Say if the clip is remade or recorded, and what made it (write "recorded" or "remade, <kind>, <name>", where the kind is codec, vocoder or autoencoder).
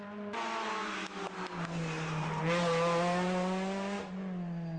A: recorded